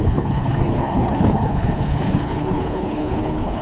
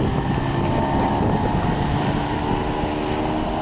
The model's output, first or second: first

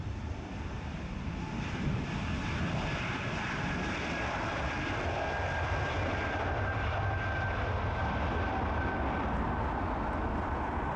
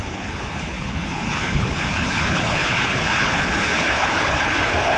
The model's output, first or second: second